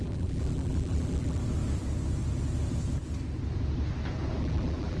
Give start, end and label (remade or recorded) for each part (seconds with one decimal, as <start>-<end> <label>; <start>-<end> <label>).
0.0-1.4 remade; 1.4-4.4 recorded; 4.4-5.0 remade